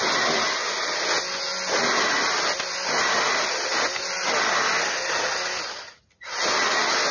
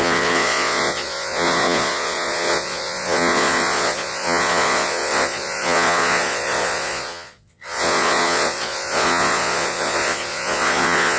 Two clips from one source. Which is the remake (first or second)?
second